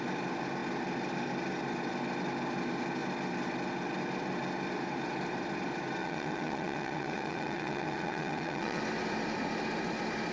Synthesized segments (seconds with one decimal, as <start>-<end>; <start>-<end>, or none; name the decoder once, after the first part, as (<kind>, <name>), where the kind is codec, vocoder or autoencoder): 6.0-8.8 (vocoder, WaveNeXt)